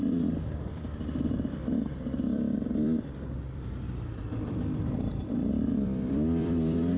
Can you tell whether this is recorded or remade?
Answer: remade